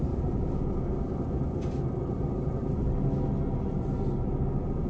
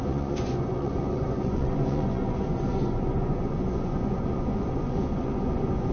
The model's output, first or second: second